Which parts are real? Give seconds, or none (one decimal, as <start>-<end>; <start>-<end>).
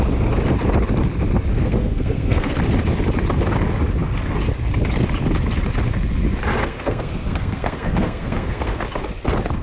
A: 0.0-1.5; 2.6-6.6; 8.8-9.6